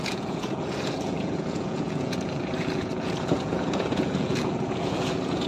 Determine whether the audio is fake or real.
fake